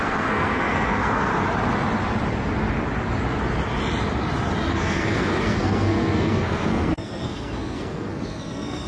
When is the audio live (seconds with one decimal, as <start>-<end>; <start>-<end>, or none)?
1.3-4.7